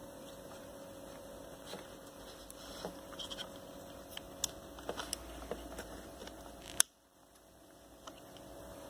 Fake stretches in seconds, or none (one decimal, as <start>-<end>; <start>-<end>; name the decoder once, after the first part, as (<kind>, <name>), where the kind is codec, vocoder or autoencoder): 0.0-3.4 (vocoder, BigVGAN v2); 5.0-8.9